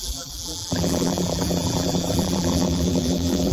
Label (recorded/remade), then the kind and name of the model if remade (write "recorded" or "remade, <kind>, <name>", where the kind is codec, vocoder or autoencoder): remade, vocoder, BigVGAN v2